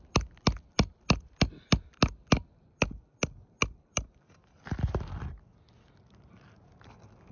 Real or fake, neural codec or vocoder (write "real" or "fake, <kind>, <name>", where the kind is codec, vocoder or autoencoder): real